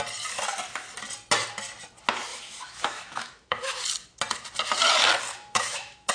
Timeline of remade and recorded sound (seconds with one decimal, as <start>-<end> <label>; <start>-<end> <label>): 0.0-2.3 recorded; 2.3-3.8 remade; 3.8-5.3 recorded; 5.3-6.1 remade